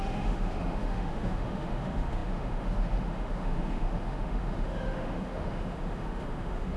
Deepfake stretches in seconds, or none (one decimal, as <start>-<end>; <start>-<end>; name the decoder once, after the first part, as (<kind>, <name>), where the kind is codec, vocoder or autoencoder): 0.0-6.8 (autoencoder, DAC-VAE)

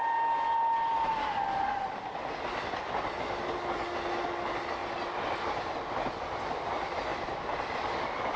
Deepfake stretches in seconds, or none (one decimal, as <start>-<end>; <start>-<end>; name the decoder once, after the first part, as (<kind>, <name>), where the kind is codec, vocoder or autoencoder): none

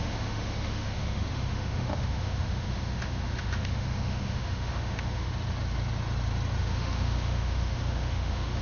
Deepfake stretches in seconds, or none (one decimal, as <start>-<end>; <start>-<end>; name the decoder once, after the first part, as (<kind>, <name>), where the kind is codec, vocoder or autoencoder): 0.0-5.3 (autoencoder, DAC-VAE); 6.6-8.6

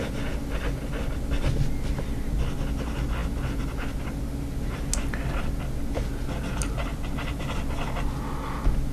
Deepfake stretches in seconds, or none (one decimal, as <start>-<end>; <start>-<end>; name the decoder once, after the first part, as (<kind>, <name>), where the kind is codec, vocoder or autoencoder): none

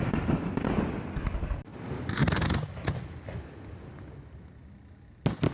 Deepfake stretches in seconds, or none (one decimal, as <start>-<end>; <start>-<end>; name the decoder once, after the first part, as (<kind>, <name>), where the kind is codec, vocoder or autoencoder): none

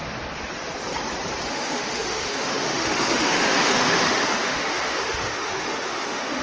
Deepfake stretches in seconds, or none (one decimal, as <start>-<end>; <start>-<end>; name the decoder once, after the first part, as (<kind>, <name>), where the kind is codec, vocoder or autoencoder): 1.5-6.4 (autoencoder, DAC-VAE)

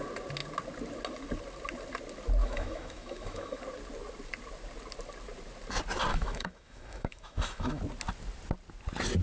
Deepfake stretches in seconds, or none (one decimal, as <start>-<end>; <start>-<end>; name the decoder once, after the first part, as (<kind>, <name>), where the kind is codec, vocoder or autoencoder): 2.4-3.6 (autoencoder, DAC-VAE); 6.1-7.8